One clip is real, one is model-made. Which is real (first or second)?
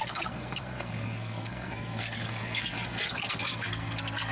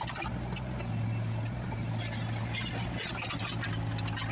second